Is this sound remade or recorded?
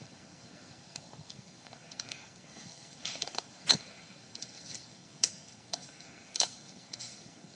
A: remade